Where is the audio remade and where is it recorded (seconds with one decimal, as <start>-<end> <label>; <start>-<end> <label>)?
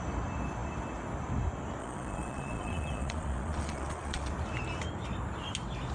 0.0-1.8 recorded; 1.8-4.3 remade; 4.3-5.9 recorded